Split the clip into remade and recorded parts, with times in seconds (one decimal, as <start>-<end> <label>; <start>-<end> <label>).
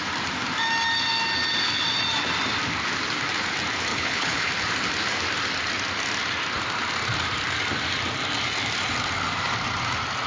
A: 0.0-3.9 recorded; 3.9-4.5 remade; 4.5-10.3 recorded